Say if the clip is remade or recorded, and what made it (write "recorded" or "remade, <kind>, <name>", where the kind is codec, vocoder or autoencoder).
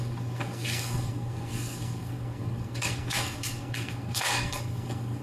remade, codec, SNAC